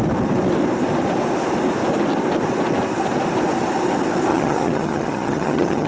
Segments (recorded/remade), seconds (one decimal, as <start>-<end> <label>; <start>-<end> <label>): 0.0-4.3 recorded; 4.3-5.9 remade